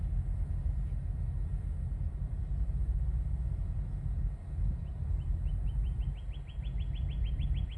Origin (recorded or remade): recorded